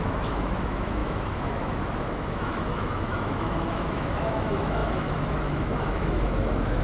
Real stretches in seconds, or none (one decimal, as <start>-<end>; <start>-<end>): none